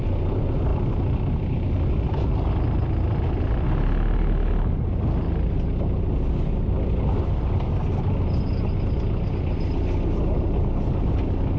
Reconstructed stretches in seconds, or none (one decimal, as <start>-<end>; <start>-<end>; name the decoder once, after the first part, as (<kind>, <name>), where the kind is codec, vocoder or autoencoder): none